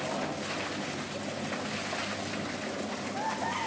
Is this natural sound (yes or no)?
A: yes